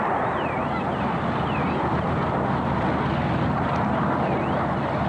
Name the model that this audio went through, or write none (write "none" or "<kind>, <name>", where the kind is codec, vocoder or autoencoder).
vocoder, BigVGAN v2